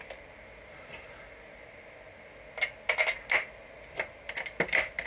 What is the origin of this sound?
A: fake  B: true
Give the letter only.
B